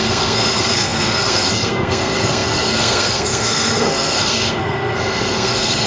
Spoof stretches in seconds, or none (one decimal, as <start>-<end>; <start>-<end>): 0.0-5.9